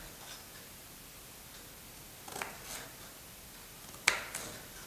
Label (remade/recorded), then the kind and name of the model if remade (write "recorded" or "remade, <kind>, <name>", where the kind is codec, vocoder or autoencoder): recorded